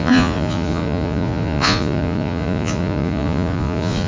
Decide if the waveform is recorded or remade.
remade